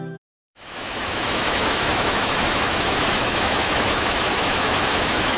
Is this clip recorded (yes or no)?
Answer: no